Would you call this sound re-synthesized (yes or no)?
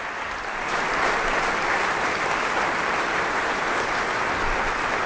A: no